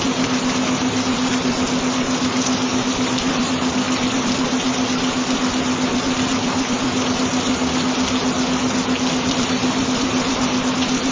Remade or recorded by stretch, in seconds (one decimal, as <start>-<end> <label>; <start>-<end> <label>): 0.0-7.5 remade; 7.5-9.3 recorded; 9.3-11.1 remade